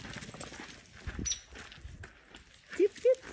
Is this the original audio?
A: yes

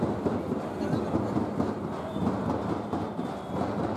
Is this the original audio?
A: yes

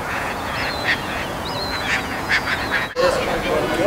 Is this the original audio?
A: no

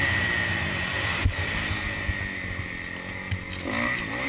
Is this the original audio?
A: yes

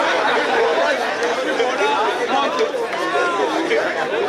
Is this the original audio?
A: yes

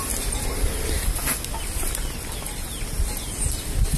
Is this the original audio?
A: yes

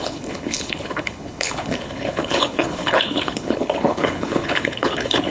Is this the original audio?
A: no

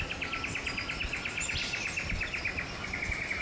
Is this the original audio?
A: yes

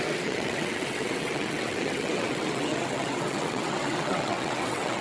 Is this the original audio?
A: no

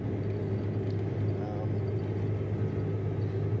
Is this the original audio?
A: yes